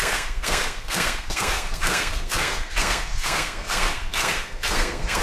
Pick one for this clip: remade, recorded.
remade